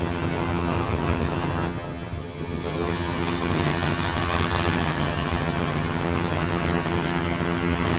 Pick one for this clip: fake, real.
fake